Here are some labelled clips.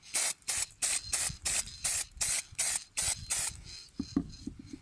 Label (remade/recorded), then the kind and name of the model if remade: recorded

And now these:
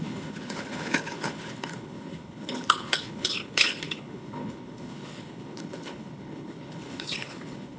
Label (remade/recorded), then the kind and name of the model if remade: remade, codec, HILCodec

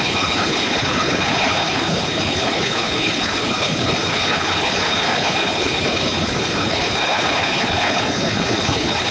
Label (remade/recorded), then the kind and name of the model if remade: remade, codec, HILCodec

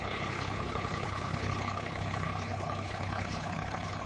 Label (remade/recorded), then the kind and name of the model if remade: remade, codec, HILCodec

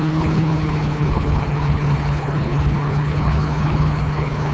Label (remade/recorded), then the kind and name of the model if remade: remade, codec, HILCodec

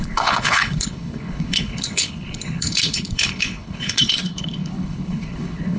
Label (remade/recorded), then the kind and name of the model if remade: remade, codec, HILCodec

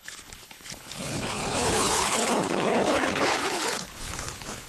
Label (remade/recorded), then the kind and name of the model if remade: remade, codec, HILCodec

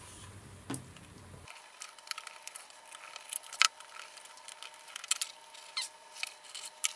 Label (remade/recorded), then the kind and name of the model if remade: recorded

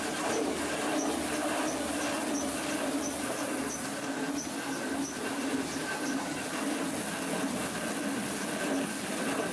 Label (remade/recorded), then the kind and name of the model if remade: recorded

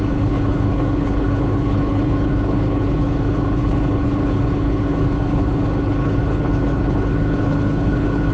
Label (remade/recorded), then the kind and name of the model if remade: remade, codec, HILCodec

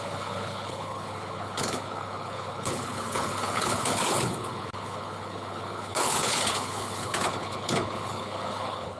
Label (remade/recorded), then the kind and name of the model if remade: remade, codec, HILCodec